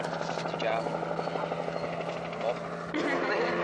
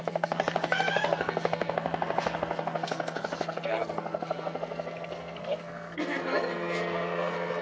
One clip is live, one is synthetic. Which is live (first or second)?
first